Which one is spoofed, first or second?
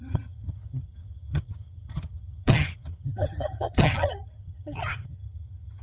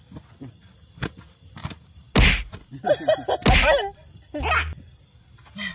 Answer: first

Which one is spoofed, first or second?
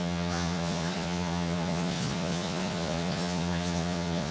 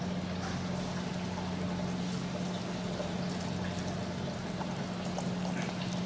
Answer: first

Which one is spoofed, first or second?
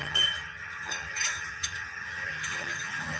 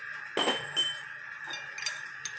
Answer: first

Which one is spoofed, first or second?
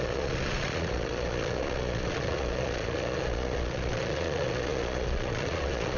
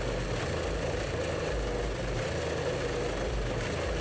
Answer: first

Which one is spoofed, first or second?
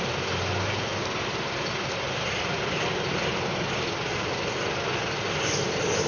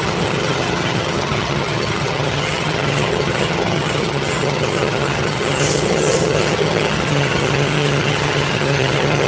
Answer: second